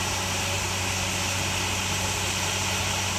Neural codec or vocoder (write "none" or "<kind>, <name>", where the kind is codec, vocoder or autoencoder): none